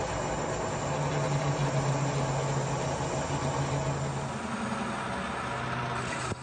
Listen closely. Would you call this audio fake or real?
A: real